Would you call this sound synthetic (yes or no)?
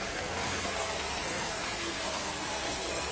yes